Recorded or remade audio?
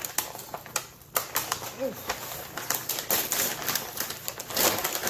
remade